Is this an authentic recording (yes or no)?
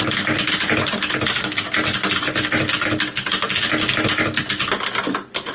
yes